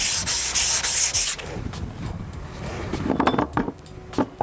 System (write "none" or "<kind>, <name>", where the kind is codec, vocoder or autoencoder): none